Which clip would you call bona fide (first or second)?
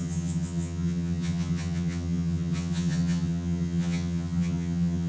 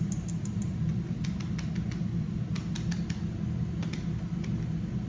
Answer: second